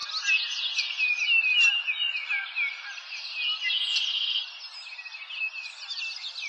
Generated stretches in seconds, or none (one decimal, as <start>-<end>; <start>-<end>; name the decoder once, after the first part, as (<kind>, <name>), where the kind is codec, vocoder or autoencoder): none